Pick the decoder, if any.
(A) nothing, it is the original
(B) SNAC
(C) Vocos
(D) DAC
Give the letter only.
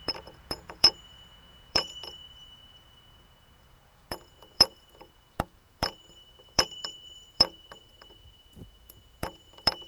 C